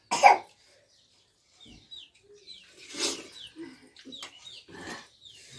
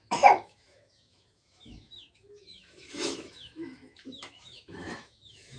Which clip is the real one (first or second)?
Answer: first